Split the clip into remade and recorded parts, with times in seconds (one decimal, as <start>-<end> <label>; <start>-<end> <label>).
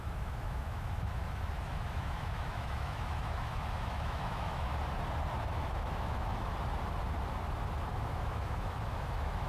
0.0-4.7 remade; 4.7-5.5 recorded; 5.5-6.5 remade; 6.5-7.9 recorded; 7.9-9.5 remade